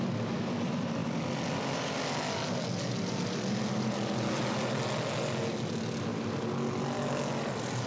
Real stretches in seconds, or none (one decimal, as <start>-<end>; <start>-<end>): 0.0-7.9